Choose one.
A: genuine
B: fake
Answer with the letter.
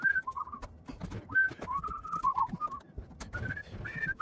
A